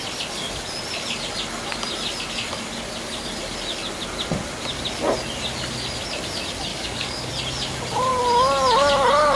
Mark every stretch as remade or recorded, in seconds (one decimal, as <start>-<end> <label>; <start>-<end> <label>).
0.0-6.7 recorded; 6.7-7.3 remade; 7.3-9.4 recorded